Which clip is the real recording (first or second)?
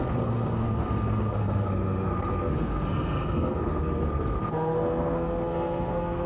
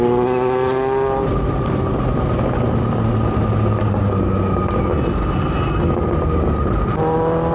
second